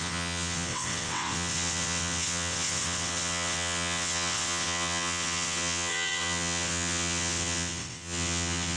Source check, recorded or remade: remade